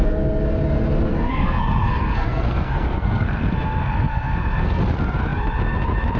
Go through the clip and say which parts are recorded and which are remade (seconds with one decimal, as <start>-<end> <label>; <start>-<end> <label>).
0.0-1.1 recorded; 1.1-4.8 remade; 4.8-6.2 recorded